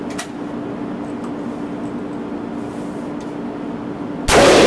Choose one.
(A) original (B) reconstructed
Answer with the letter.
A